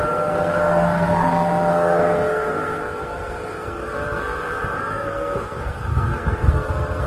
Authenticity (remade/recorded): remade